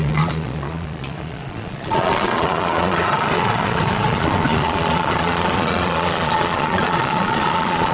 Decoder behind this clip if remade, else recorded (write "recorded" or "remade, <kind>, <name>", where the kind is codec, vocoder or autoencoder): remade, vocoder, Vocos